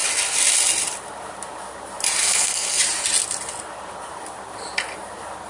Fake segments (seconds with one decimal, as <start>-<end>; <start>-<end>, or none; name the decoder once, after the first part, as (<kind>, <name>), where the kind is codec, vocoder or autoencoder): 2.2-2.8 (codec, SNAC)